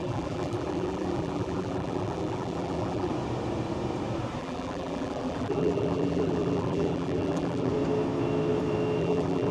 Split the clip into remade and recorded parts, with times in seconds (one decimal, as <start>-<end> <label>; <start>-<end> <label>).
0.0-3.1 remade; 3.1-4.4 recorded; 4.4-7.7 remade; 7.7-9.0 recorded; 9.0-9.5 remade